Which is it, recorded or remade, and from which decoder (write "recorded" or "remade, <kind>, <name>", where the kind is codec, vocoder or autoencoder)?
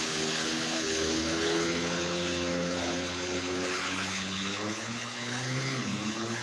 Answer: remade, codec, HILCodec